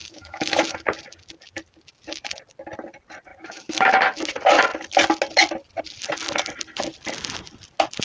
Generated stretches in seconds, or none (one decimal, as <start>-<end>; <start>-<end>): 0.0-0.6; 3.3-3.9